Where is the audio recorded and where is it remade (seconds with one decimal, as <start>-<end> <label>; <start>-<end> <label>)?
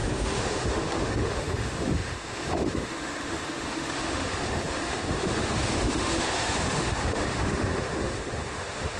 0.0-9.0 remade